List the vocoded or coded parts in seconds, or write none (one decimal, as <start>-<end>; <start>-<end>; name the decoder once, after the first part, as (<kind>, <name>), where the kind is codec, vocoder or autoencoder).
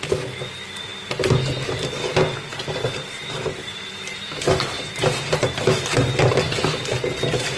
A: none